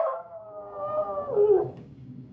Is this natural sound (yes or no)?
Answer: no